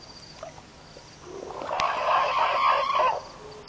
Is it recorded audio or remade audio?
recorded